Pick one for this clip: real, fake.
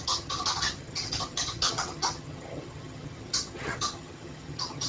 fake